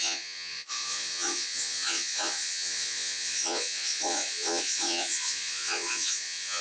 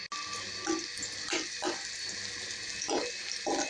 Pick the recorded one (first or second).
second